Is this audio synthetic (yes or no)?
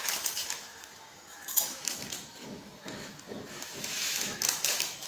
yes